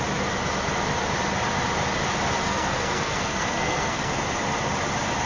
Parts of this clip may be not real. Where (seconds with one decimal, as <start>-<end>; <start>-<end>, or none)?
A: 2.4-4.1